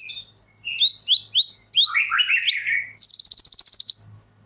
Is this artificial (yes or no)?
no